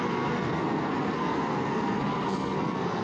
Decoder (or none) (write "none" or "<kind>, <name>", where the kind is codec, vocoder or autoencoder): codec, SNAC